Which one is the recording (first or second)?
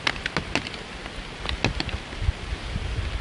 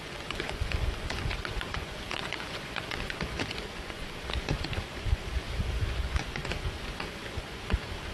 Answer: first